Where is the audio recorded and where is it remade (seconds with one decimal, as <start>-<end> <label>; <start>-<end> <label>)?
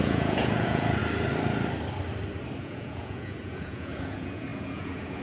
0.0-1.0 remade; 1.0-2.6 recorded; 2.6-5.2 remade